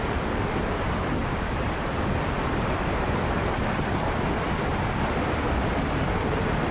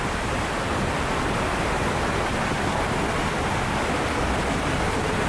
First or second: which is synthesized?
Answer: first